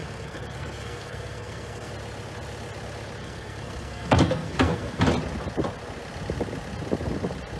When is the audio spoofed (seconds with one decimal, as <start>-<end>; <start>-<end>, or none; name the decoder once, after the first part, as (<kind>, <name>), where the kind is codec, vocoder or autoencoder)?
0.0-1.9 (codec, SNAC); 3.2-5.0